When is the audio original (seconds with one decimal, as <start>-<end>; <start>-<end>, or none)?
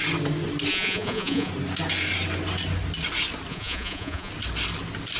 0.0-0.7; 1.5-3.5; 4.3-5.2